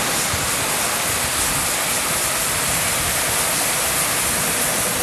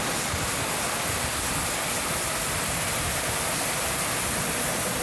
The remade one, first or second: second